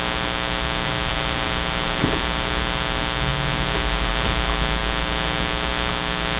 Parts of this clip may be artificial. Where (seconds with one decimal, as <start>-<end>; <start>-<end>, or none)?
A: none